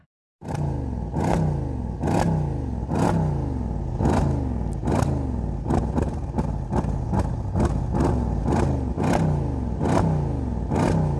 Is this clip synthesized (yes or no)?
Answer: no